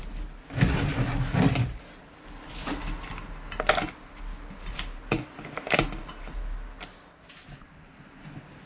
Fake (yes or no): no